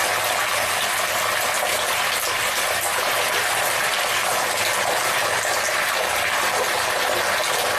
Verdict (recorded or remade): recorded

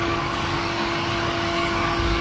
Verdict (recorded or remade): remade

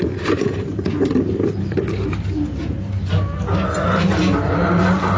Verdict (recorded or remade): recorded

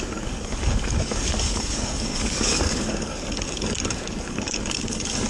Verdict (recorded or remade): remade